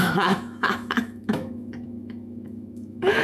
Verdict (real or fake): fake